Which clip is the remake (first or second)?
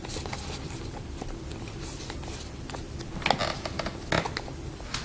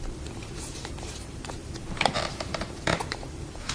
second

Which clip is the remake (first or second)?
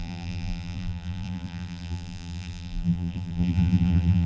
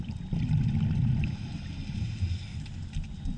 first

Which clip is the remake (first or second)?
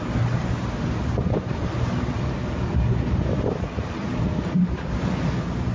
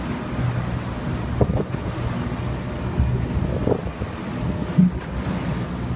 first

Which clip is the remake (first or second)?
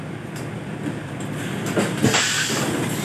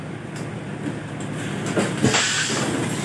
first